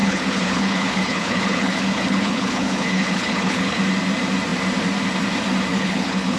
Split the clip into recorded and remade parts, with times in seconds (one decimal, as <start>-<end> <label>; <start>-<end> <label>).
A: 0.0-3.8 remade; 3.8-5.7 recorded; 5.7-6.4 remade